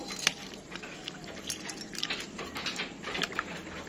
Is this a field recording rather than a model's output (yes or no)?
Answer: yes